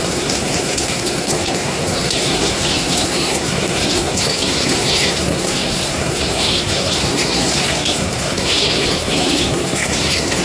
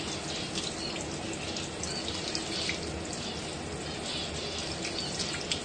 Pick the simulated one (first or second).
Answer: first